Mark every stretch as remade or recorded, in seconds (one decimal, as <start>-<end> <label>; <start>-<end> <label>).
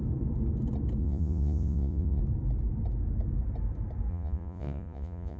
0.0-1.0 recorded; 1.0-2.2 remade; 2.2-4.1 recorded; 4.1-5.4 remade